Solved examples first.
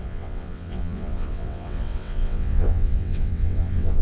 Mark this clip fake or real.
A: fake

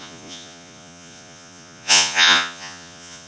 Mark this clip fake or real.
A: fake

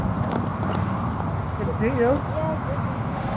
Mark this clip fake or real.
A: real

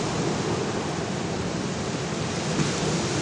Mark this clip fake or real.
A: real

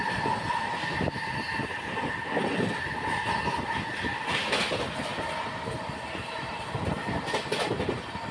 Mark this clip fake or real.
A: real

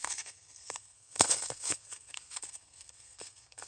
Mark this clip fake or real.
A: fake